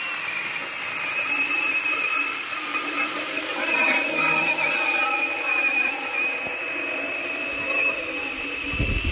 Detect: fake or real real